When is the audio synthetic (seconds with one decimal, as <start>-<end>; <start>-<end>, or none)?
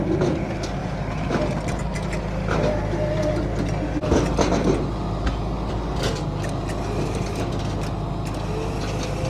none